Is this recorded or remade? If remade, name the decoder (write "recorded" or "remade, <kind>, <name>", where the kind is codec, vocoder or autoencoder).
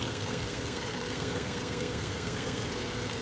remade, codec, SNAC